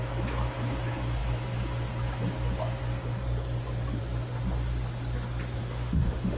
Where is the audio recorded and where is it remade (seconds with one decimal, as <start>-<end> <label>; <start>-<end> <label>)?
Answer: 0.0-5.6 recorded; 5.6-6.4 remade